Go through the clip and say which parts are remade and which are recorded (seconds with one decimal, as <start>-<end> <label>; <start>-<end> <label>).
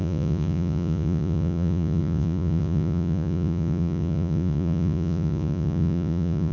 0.0-6.5 remade